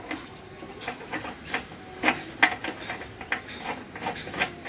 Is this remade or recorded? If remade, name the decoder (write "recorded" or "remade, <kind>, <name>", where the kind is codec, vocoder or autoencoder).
recorded